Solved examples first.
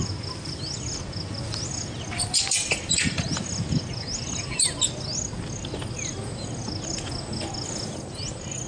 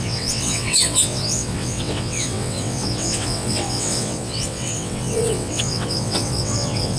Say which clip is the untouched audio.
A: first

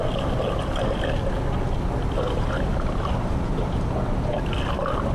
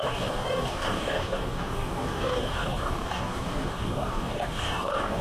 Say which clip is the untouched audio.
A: first